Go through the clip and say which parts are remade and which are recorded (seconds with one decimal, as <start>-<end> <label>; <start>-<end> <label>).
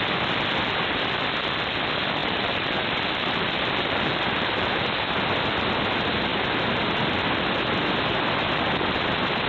0.0-2.2 recorded; 2.2-4.8 remade; 4.8-9.5 recorded